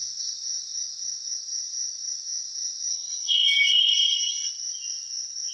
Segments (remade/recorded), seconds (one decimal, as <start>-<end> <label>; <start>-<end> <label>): 0.0-2.9 recorded; 2.9-4.5 remade; 4.5-5.5 recorded